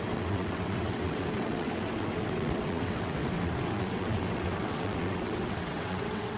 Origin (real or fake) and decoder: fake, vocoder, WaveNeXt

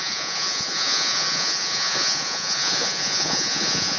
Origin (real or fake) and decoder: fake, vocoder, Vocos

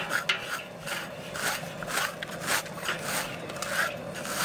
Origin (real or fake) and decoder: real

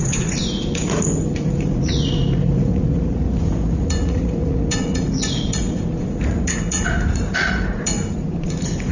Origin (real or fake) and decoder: fake, vocoder, Vocos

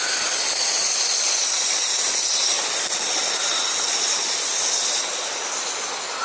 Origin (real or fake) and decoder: real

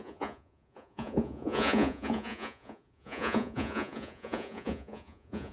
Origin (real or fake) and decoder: fake, vocoder, Vocos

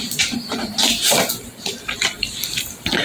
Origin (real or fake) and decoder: real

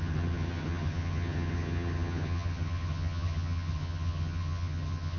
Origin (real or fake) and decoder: fake, vocoder, HiFi-GAN